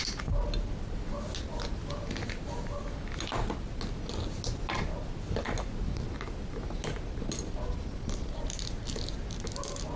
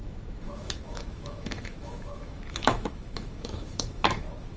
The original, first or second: first